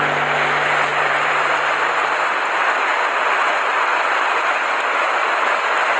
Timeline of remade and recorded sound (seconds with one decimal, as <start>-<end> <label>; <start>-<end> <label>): 0.0-0.9 recorded; 0.9-2.3 remade; 2.3-6.0 recorded